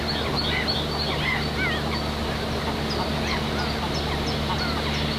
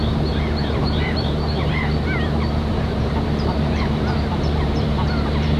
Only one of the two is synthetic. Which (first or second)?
second